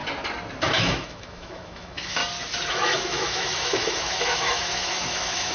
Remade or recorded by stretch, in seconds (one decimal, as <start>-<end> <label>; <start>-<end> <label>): 0.0-0.7 recorded; 0.7-2.2 remade; 2.2-2.7 recorded; 2.7-5.5 remade